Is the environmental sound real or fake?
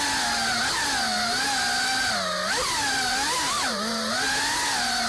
real